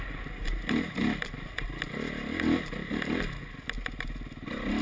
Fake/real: real